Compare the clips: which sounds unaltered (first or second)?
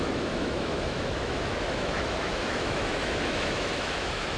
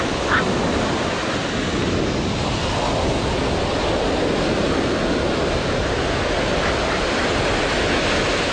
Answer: second